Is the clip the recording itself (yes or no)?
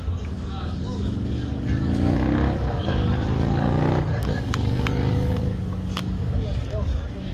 no